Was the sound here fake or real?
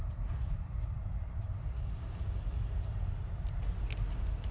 real